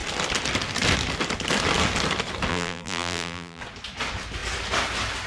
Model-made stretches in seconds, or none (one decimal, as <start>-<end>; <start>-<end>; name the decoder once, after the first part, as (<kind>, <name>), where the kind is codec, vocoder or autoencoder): 2.5-3.6 (vocoder, BigVGAN v2)